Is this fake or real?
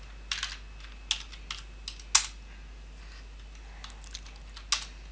real